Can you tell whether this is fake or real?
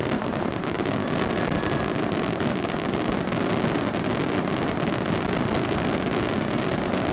real